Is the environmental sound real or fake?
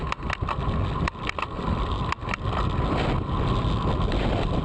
real